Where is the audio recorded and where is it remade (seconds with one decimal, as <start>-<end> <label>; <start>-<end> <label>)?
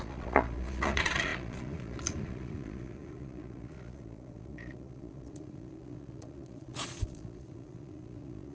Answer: 0.0-8.5 remade